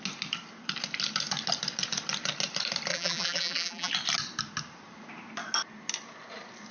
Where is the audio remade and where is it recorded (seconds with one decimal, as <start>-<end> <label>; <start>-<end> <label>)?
0.0-2.9 recorded; 2.9-3.9 remade; 3.9-6.7 recorded